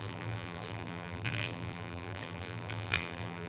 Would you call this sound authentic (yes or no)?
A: no